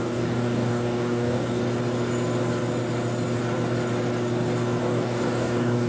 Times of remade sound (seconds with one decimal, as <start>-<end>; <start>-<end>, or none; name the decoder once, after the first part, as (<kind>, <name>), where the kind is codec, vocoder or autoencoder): 0.0-1.6 (codec, DAC); 4.8-5.9